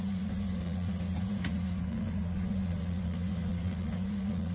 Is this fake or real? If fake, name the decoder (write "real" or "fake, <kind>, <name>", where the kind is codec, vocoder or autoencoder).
fake, vocoder, Vocos